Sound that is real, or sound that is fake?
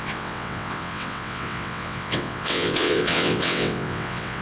fake